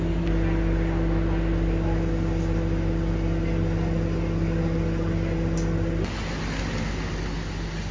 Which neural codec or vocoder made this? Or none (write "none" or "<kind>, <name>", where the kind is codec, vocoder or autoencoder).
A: none